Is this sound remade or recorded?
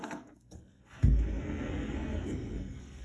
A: remade